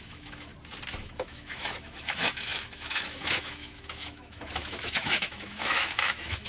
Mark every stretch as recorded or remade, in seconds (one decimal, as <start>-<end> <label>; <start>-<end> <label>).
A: 0.0-0.5 remade; 0.5-1.0 recorded; 1.0-6.5 remade